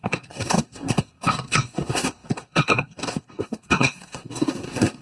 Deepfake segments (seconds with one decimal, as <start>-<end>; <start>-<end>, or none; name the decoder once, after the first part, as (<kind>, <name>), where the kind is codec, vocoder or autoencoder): 0.0-5.0 (codec, SNAC)